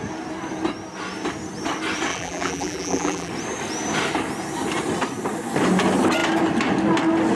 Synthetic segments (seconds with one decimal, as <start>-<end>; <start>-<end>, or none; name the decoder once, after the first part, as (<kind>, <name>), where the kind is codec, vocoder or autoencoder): 2.1-3.3 (vocoder, BigVGAN v2)